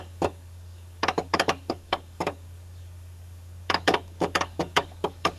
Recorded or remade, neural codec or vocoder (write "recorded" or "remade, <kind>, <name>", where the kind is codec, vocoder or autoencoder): remade, codec, DAC